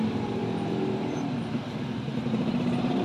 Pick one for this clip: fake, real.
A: fake